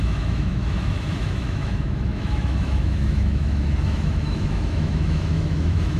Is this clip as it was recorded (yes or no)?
no